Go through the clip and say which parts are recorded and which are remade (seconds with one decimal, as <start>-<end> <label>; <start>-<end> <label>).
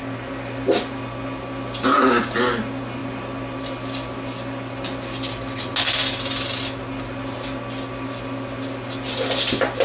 0.0-9.8 recorded